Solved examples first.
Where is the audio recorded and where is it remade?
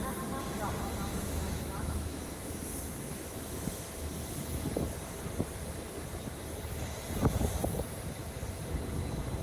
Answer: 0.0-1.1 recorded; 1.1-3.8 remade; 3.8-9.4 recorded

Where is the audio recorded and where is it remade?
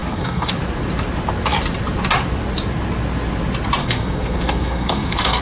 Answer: 0.0-0.5 remade; 0.5-3.8 recorded; 3.8-5.4 remade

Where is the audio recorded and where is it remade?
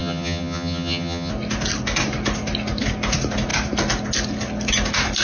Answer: 0.0-1.3 remade; 1.3-5.2 recorded